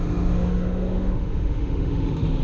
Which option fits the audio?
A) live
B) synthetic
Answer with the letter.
B